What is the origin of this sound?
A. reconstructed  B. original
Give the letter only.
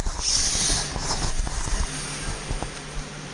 B